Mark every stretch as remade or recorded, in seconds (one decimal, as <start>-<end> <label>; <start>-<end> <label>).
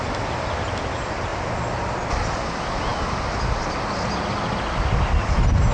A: 0.0-2.9 remade; 2.9-5.7 recorded